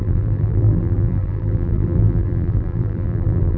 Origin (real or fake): fake